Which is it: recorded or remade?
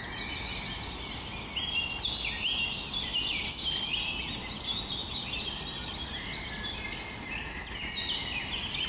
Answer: recorded